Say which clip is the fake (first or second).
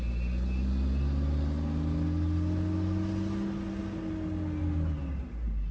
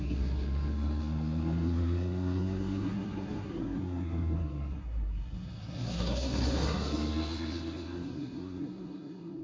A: second